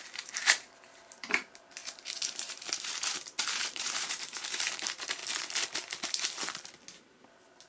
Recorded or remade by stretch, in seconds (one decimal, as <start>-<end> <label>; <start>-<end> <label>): 0.0-5.2 remade; 5.2-7.7 recorded